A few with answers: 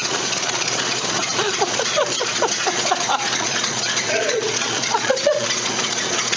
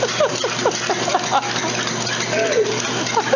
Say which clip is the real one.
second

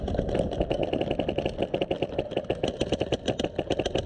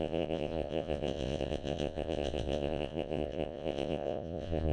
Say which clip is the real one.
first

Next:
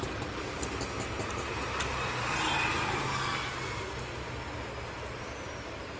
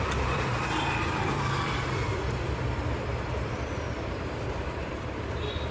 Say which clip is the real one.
first